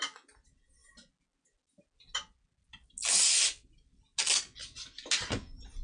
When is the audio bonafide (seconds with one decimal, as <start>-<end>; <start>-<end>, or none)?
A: 0.0-5.8